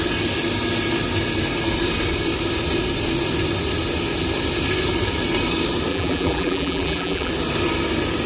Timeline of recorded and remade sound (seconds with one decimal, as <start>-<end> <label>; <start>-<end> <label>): 0.0-5.9 recorded; 5.9-7.3 remade; 7.3-8.3 recorded